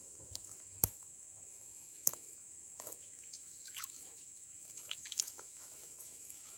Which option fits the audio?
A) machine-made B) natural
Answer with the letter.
A